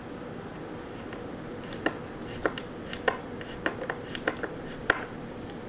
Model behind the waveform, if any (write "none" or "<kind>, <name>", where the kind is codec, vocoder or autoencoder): none